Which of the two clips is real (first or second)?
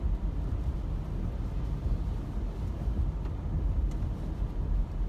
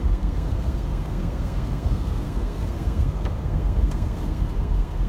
first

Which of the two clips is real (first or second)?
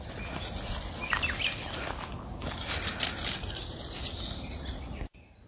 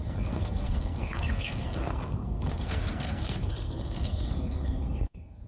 first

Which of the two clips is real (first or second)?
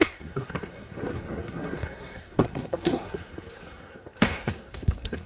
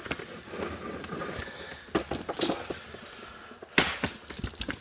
second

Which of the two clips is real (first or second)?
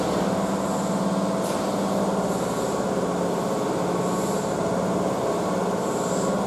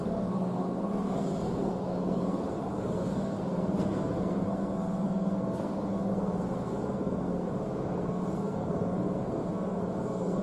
first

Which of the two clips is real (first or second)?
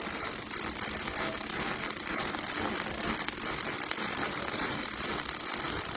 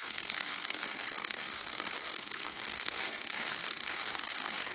first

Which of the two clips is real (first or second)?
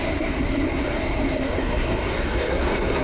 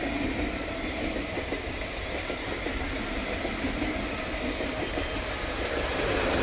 second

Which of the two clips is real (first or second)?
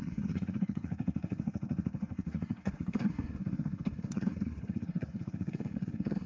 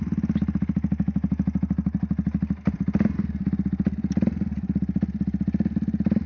second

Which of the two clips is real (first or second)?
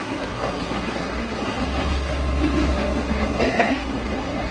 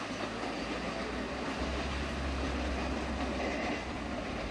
second